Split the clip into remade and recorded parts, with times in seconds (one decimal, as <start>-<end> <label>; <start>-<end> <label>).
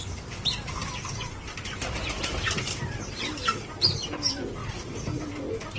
0.0-5.8 recorded